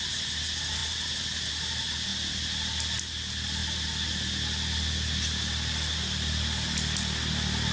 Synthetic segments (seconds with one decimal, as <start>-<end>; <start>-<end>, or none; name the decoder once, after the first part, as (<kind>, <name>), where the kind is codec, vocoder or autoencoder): none